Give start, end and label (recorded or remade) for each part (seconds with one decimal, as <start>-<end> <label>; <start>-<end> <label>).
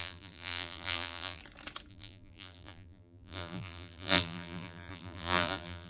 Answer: 0.0-1.4 remade; 1.4-1.9 recorded; 1.9-5.9 remade